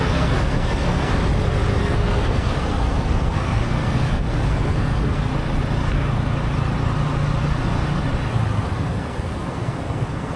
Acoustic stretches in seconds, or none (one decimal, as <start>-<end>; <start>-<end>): 1.2-1.8; 5.3-8.6